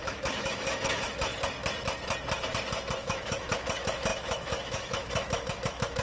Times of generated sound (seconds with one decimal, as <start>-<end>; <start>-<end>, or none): 0.0-1.3; 3.0-6.0